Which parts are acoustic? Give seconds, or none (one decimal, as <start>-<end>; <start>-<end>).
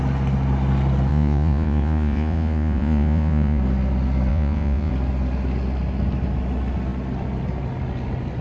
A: 0.0-1.1; 3.6-4.3; 4.9-8.4